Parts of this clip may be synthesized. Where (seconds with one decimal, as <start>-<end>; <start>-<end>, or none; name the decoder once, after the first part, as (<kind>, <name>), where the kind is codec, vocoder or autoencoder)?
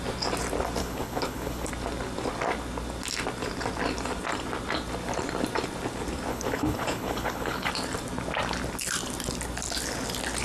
0.8-1.7 (codec, HILCodec); 6.3-7.7